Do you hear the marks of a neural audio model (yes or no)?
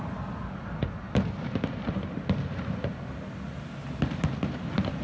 no